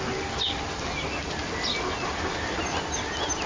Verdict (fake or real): real